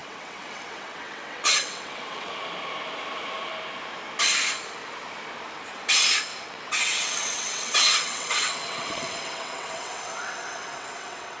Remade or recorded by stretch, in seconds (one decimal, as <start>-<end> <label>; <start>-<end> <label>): 0.0-2.3 remade; 2.3-6.3 recorded; 6.3-11.4 remade